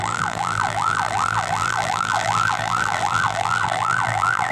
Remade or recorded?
remade